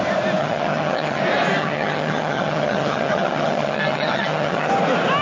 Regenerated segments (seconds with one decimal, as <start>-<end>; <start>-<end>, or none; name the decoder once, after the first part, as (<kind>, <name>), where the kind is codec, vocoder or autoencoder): 0.4-1.2 (vocoder, HiFi-GAN); 1.6-4.7